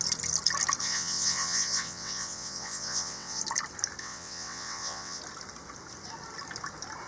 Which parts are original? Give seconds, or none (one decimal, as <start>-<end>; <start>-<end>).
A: 0.0-0.8; 3.4-4.0; 5.2-7.1